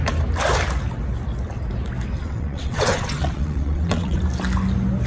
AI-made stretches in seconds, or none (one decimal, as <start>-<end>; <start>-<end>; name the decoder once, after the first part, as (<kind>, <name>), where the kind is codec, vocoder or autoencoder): 2.2-4.2 (vocoder, WaveNeXt)